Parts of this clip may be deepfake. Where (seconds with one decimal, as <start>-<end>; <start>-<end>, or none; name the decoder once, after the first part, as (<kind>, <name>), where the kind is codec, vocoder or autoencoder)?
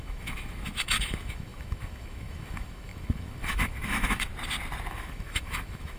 0.0-4.3 (autoencoder, DAC-VAE); 4.9-6.0